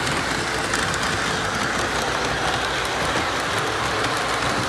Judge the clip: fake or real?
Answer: real